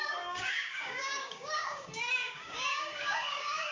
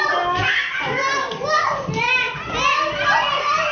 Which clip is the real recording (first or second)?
second